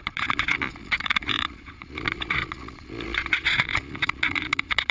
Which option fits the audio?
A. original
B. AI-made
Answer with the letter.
B